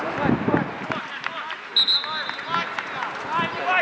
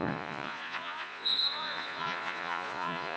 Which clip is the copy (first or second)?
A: second